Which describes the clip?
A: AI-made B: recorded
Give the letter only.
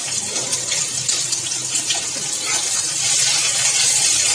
B